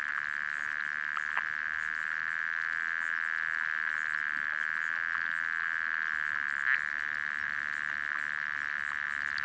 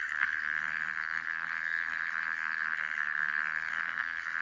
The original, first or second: first